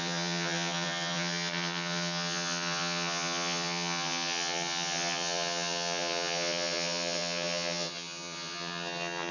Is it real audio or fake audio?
fake